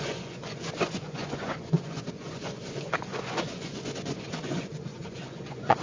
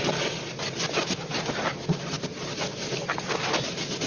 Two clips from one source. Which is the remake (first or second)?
first